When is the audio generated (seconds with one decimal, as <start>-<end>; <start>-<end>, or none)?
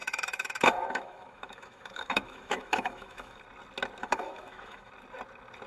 0.0-3.4; 4.0-4.9